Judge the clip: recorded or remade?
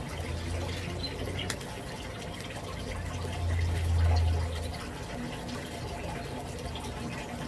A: recorded